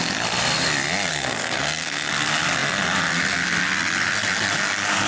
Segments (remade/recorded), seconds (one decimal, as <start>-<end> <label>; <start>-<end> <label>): 0.0-1.1 recorded; 1.1-2.1 remade; 2.1-5.1 recorded